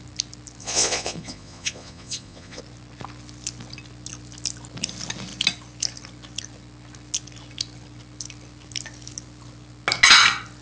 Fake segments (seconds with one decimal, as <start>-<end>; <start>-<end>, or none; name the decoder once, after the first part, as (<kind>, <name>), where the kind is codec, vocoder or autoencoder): 0.6-2.6 (vocoder, Vocos)